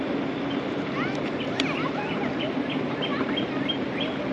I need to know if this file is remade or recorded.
remade